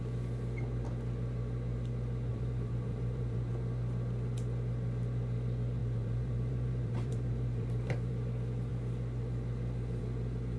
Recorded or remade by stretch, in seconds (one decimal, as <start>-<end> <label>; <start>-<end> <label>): 0.0-2.3 recorded; 2.3-3.5 remade; 3.5-5.8 recorded; 5.8-8.1 remade; 8.1-10.6 recorded